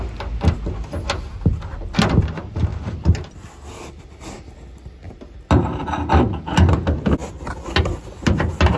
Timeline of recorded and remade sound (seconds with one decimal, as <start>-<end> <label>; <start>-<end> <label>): 0.0-8.8 recorded